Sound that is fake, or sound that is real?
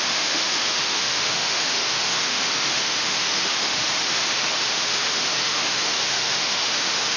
fake